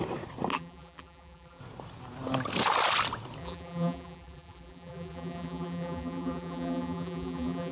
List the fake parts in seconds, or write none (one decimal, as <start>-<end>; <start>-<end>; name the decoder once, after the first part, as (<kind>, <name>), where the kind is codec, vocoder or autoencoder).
0.5-1.6 (vocoder, BigVGAN v2); 3.4-7.7